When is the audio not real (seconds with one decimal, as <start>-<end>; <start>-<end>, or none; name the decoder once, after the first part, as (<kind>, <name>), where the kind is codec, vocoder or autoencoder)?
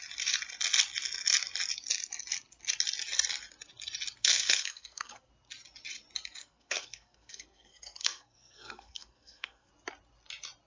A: 4.2-5.3 (codec, SNAC); 6.4-9.7